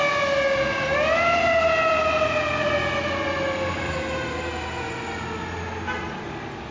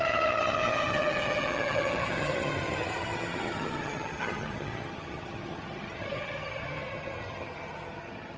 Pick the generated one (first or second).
second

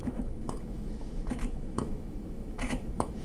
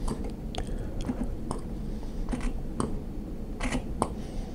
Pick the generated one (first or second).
first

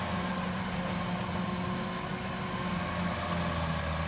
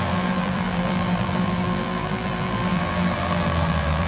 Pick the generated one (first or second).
second